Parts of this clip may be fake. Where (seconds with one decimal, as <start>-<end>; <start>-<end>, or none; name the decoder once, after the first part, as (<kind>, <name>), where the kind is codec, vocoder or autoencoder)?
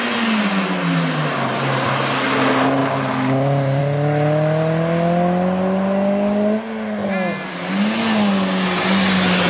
none